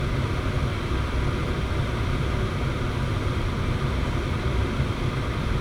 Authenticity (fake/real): fake